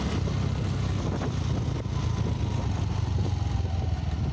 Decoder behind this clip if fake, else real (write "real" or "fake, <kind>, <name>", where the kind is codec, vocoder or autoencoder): real